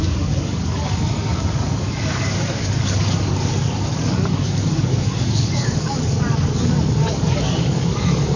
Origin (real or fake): fake